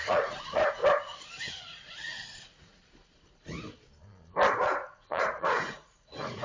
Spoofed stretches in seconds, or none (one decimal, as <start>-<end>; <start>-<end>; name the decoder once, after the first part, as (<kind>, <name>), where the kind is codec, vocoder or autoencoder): 0.0-0.8 (vocoder, Vocos); 1.4-2.8; 4.6-6.4

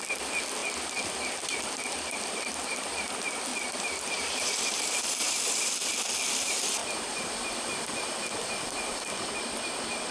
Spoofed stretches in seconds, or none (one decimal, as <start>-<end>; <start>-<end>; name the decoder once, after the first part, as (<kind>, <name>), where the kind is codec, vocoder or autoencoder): 3.5-5.7 (vocoder, BigVGAN v2); 6.8-7.5